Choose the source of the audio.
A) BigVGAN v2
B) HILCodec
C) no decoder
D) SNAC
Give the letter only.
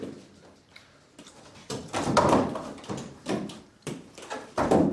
A